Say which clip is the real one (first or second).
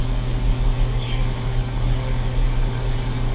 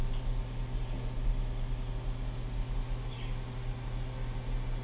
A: second